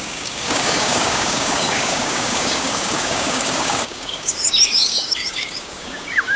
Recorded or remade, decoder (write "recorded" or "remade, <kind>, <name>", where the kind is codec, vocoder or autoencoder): remade, codec, DAC